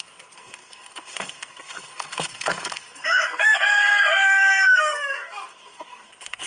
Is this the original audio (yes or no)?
no